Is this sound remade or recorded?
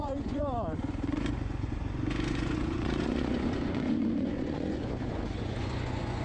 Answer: remade